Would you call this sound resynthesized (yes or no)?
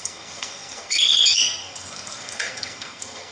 yes